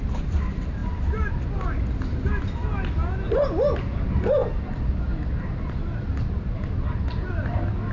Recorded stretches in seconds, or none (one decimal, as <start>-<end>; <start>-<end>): 0.0-7.9